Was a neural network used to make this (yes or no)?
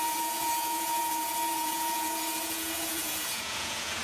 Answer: yes